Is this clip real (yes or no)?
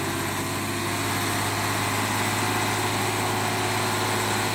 yes